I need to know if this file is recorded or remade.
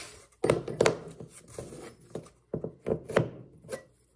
recorded